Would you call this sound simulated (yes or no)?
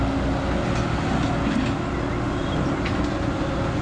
no